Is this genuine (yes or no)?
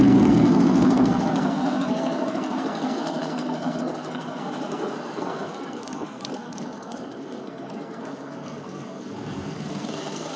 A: no